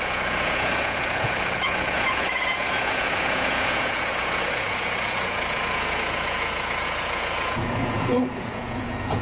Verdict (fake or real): fake